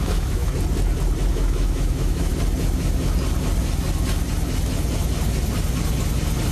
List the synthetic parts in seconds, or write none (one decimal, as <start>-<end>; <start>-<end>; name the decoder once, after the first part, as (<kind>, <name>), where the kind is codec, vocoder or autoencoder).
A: 0.0-0.5 (autoencoder, DAC-VAE); 1.3-2.3